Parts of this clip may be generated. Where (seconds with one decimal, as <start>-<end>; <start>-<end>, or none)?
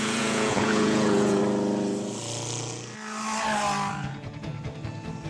0.0-1.4; 3.9-4.5